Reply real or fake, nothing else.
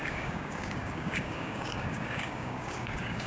fake